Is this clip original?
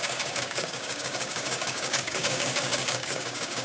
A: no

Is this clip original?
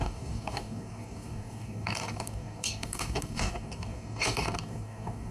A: no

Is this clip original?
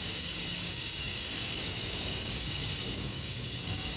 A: no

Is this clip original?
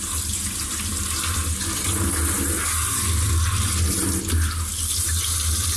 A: yes